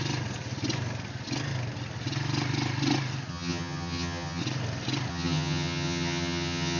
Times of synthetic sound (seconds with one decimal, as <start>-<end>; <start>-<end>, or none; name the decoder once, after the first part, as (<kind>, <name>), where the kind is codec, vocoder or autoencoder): 3.3-4.4 (vocoder, HiFi-GAN); 5.1-6.8